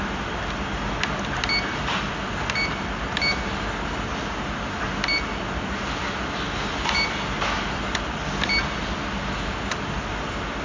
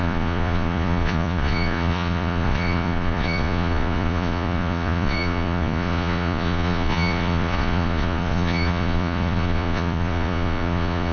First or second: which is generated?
second